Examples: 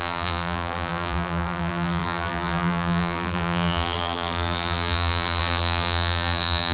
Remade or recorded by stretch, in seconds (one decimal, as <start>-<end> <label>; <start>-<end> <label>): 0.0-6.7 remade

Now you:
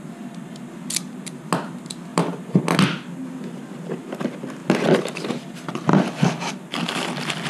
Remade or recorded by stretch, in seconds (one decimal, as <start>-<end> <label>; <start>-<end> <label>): 0.0-2.1 recorded; 2.1-2.6 remade; 2.6-7.5 recorded

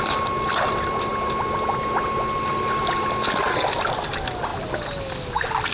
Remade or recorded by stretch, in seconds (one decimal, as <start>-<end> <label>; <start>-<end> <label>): 0.0-5.7 recorded

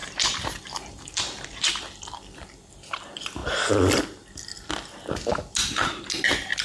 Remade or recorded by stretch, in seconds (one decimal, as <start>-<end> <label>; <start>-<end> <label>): 0.0-1.7 remade; 1.7-6.6 recorded

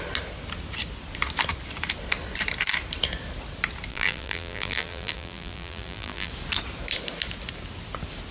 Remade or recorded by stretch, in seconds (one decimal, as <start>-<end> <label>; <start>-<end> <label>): 0.0-3.9 recorded; 3.9-6.3 remade; 6.3-8.3 recorded

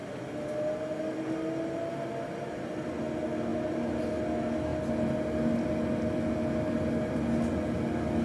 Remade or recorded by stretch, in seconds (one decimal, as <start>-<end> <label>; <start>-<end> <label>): 0.0-3.5 recorded; 3.5-4.1 remade; 4.1-8.2 recorded